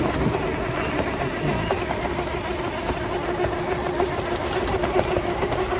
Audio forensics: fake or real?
real